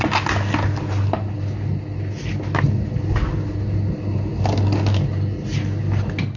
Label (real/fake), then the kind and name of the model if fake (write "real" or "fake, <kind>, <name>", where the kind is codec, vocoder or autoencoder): real